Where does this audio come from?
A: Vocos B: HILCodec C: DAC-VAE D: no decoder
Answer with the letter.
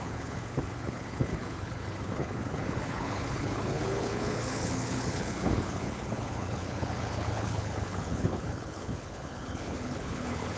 B